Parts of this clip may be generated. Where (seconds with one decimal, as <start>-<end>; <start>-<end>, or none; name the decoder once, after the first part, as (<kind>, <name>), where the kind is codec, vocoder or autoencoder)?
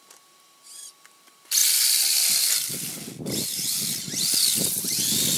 none